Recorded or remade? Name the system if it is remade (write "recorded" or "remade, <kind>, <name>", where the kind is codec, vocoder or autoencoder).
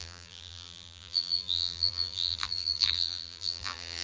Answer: remade, vocoder, BigVGAN v2